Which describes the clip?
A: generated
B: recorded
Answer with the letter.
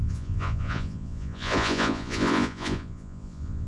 A